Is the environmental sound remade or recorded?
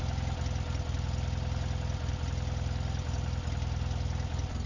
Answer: recorded